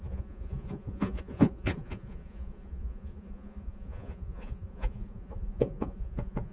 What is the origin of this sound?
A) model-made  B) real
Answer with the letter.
A